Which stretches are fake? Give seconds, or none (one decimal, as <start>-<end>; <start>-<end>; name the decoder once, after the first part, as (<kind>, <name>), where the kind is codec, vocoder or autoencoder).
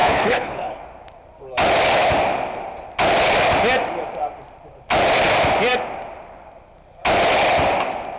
0.0-0.8 (codec, HILCodec)